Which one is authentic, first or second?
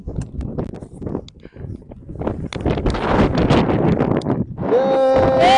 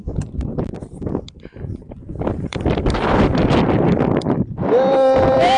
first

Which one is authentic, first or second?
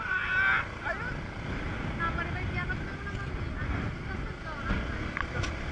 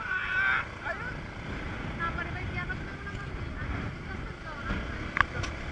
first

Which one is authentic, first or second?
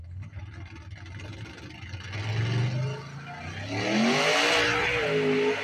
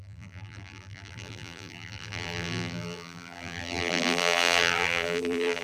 first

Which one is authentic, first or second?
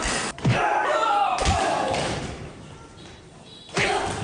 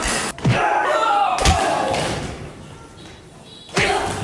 second